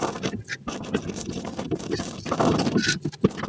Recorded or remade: recorded